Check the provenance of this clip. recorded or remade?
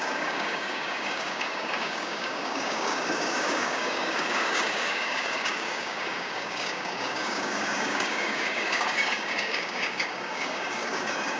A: remade